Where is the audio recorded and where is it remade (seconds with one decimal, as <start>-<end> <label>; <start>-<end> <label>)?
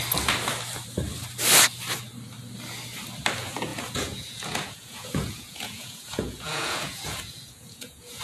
0.0-3.7 recorded; 3.7-8.2 remade